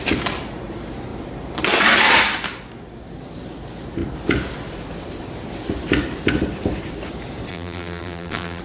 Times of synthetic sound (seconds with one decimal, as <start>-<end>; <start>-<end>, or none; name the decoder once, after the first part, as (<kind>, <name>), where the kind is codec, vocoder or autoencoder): 7.5-8.6 (vocoder, BigVGAN v2)